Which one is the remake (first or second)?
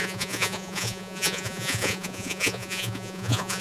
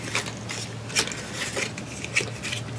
first